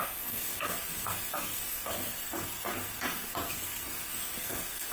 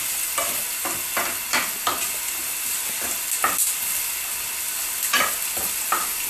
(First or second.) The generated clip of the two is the first